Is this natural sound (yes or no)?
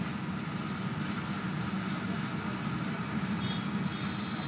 yes